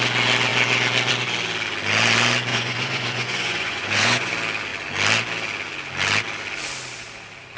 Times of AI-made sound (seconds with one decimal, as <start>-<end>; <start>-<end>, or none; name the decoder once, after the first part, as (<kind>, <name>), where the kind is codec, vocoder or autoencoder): 2.5-4.3 (vocoder, Vocos)